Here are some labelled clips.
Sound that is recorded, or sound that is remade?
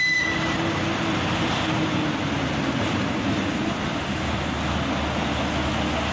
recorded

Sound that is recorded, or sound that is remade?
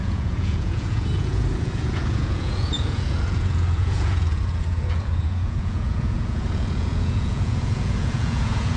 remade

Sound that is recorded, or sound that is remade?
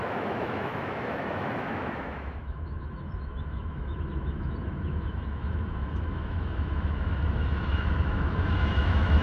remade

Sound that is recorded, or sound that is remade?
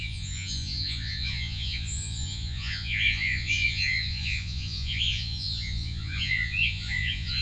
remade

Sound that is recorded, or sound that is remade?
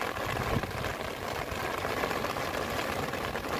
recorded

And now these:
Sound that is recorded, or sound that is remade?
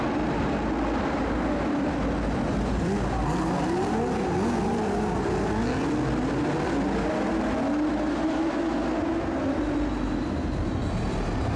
recorded